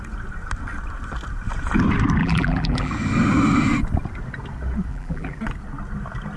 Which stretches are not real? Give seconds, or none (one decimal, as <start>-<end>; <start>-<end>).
2.2-2.9; 4.9-5.4